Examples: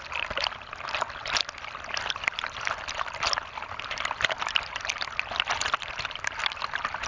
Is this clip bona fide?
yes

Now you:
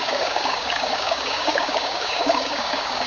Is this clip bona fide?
no